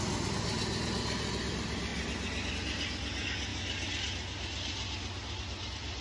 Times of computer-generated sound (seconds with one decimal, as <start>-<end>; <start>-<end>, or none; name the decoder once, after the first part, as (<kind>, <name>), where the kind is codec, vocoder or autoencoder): none